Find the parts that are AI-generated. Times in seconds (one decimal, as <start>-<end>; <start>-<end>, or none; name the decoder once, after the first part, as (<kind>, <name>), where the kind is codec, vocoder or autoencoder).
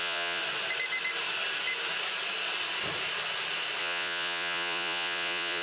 0.0-0.4 (vocoder, Vocos); 3.8-5.6